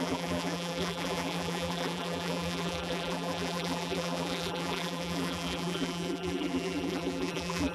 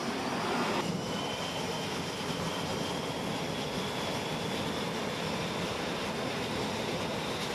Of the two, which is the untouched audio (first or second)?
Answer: second